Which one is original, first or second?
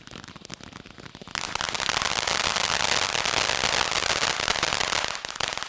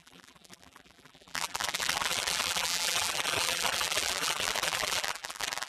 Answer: first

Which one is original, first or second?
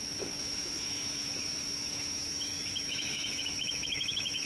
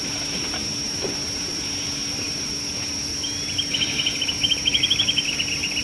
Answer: second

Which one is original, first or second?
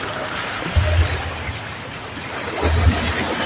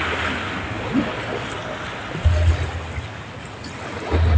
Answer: second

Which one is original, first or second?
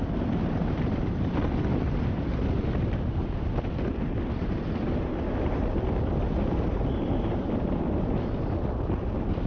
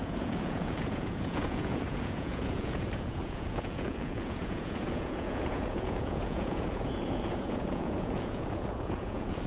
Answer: first